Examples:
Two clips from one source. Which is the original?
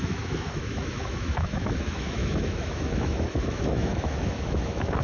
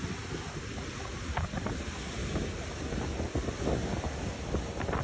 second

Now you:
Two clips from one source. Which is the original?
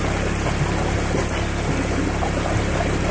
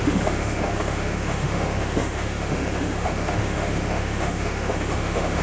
first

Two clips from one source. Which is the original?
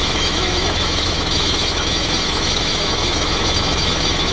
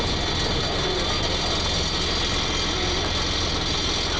second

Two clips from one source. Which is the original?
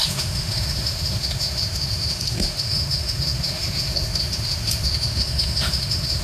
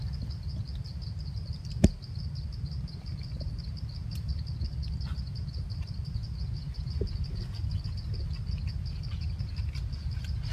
second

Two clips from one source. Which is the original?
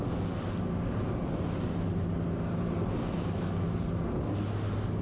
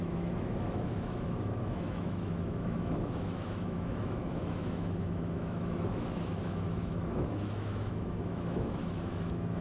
first